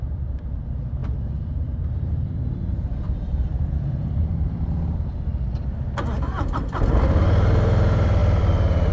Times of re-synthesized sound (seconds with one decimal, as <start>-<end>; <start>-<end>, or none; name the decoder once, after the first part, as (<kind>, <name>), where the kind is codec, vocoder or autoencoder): 0.0-5.3 (vocoder, BigVGAN v2); 6.9-8.9